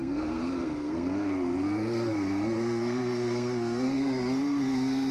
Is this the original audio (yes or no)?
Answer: no